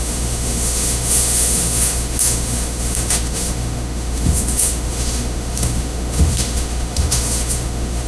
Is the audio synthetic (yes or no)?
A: yes